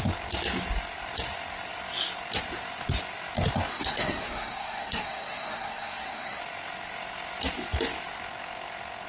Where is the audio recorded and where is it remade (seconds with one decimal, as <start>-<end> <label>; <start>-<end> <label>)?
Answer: 0.0-3.7 recorded; 3.7-6.4 remade; 6.4-9.1 recorded